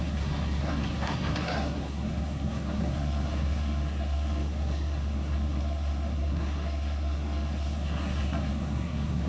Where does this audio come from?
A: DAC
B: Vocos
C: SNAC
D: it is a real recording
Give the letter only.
C